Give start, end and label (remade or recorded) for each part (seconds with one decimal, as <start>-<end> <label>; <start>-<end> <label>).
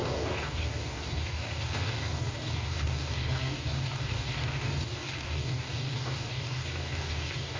0.0-7.6 remade